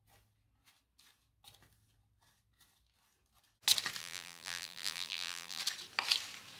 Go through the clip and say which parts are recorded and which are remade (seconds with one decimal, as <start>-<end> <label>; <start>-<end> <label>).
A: 0.0-4.0 recorded; 4.0-5.6 remade; 5.6-6.6 recorded